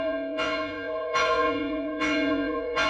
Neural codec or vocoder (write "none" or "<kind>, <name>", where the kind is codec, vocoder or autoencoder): vocoder, Vocos